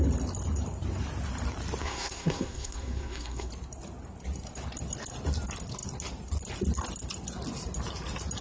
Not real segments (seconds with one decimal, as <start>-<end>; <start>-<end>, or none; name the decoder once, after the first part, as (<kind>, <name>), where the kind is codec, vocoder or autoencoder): 1.8-3.5 (codec, SNAC)